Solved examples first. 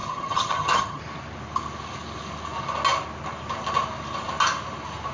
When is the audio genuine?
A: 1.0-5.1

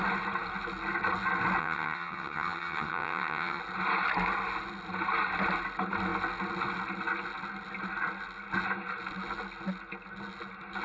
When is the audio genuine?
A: 0.0-1.6; 3.6-10.8

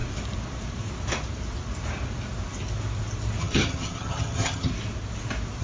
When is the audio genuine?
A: 0.0-3.4; 4.7-5.6

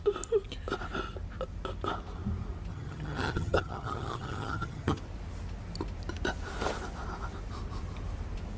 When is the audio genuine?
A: 0.0-2.7; 5.0-8.6

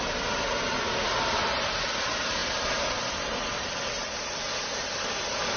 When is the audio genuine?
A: 0.0-5.6

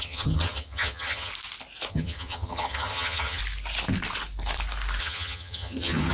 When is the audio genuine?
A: 1.3-1.9; 3.4-5.0

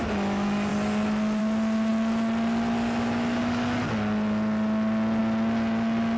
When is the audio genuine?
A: 0.0-6.2